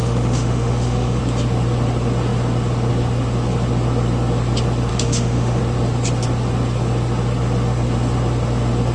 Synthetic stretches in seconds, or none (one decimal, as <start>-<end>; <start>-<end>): 0.0-1.2; 4.9-5.6